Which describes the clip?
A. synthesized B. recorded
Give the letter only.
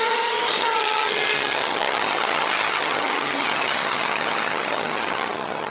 A